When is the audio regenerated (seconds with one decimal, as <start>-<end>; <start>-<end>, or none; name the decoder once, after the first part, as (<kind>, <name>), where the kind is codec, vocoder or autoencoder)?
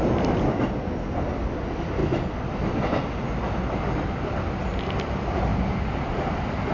none